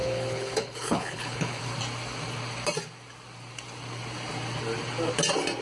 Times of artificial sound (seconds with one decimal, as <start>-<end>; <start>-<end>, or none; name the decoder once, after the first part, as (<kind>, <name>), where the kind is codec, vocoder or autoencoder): 0.0-1.6 (codec, HILCodec)